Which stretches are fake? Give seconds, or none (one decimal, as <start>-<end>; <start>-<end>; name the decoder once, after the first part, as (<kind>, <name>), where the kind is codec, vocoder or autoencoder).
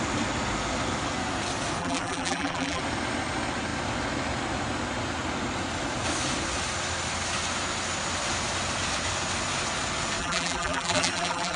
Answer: 1.8-2.8 (vocoder, BigVGAN v2); 10.2-11.6